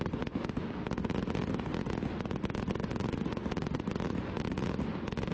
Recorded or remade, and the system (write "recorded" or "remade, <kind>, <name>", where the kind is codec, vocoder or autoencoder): recorded